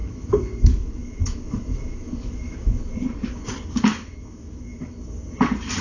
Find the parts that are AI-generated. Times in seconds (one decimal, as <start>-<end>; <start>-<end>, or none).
0.0-2.8; 3.9-5.0